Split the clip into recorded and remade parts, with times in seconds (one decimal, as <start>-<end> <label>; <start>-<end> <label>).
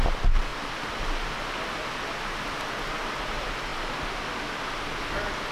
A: 0.0-3.7 recorded; 3.7-5.1 remade; 5.1-5.5 recorded